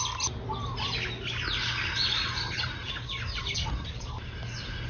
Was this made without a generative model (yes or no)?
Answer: yes